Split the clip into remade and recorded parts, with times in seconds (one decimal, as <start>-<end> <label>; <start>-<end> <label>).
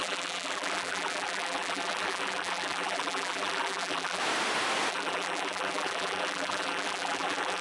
0.0-4.2 remade; 4.2-4.9 recorded; 4.9-7.6 remade